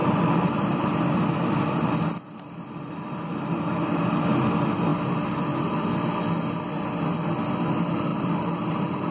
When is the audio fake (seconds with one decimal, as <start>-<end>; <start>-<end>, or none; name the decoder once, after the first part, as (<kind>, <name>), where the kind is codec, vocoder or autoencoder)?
0.0-4.1 (vocoder, BigVGAN v2); 8.1-9.1